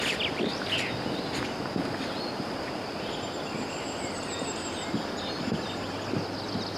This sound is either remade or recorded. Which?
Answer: recorded